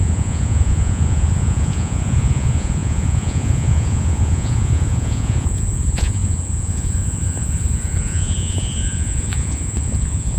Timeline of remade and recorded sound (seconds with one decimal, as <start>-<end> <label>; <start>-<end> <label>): 0.0-10.4 remade